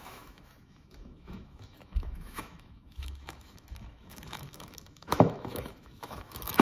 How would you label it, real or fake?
fake